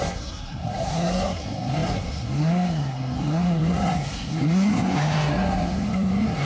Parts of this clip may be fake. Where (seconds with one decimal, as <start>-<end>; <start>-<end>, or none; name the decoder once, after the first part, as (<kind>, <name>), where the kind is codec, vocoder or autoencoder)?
0.0-6.5 (codec, SNAC)